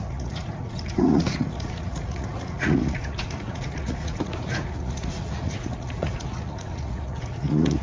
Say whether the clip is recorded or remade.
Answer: remade